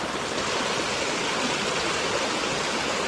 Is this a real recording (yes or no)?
yes